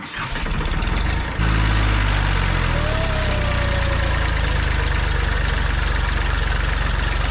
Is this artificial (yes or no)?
no